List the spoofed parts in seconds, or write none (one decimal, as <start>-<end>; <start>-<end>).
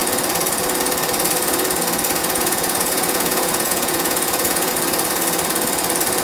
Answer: 2.2-4.7